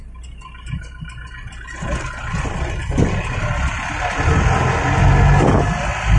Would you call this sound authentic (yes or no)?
yes